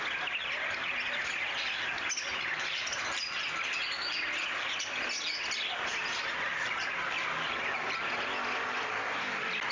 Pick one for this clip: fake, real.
real